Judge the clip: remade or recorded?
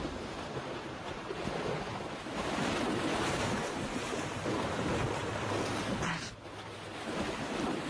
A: remade